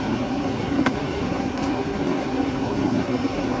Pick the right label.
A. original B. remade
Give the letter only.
B